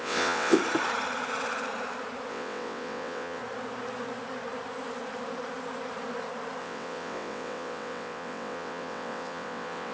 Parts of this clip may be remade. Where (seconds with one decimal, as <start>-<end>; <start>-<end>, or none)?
0.0-0.6; 2.3-3.4; 6.6-9.9